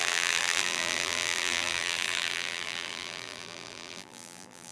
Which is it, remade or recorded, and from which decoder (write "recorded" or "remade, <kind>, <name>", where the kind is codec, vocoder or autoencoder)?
remade, vocoder, BigVGAN v2